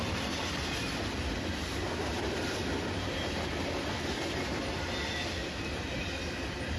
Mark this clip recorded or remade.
recorded